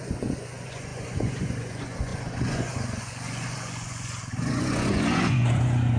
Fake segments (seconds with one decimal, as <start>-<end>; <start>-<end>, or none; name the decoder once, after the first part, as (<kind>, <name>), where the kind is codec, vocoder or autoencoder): 0.0-6.0 (vocoder, Vocos)